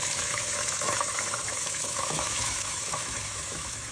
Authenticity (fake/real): fake